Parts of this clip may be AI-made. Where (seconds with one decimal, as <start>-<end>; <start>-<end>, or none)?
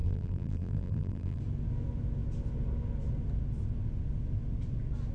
0.0-1.4